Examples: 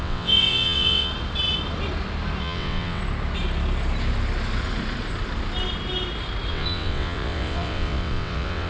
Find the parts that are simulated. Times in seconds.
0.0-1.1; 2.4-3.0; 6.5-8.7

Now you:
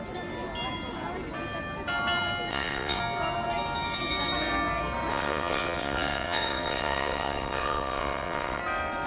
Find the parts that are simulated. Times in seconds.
2.5-3.0; 5.1-8.6